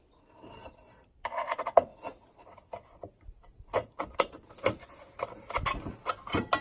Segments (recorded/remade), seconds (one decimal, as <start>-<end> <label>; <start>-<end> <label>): 0.0-6.6 recorded